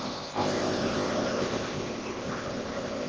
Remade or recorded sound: remade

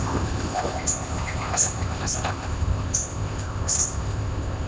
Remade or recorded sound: remade